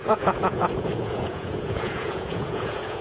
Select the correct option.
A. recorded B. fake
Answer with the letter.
B